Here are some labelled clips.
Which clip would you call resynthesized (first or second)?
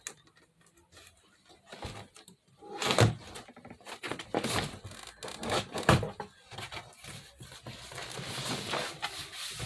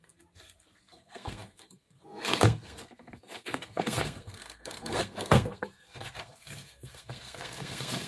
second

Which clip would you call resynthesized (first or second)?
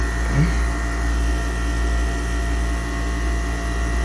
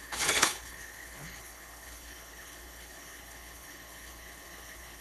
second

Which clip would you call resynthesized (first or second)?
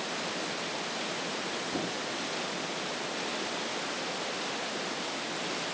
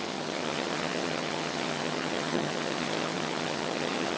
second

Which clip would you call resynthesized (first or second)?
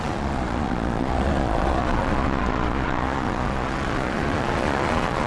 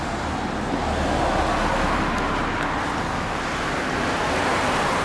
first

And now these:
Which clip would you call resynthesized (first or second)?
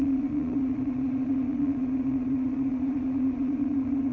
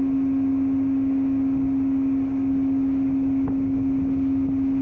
first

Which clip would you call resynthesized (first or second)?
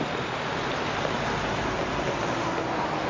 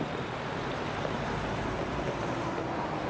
second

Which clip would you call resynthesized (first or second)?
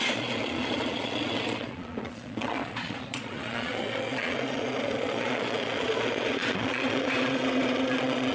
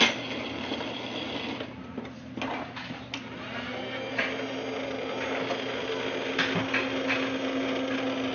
first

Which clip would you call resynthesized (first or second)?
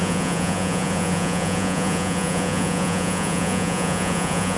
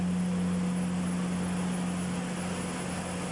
first